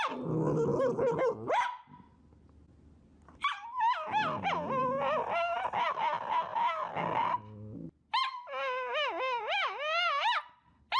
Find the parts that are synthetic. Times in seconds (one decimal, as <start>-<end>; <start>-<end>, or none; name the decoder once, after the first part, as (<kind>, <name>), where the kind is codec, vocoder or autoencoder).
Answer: none